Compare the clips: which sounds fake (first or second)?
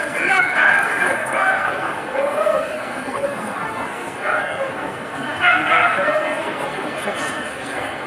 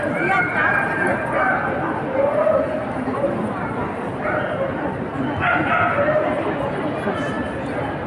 first